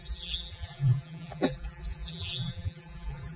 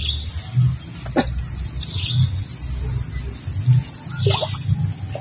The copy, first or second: first